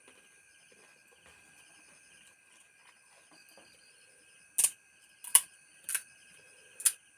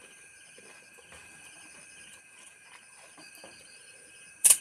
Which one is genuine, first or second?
first